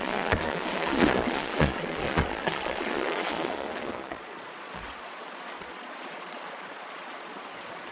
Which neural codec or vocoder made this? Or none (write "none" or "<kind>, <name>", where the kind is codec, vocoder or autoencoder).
vocoder, Vocos